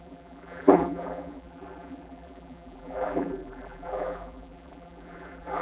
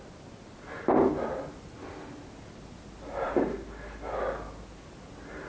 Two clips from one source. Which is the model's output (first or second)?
first